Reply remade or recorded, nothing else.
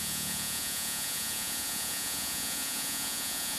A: remade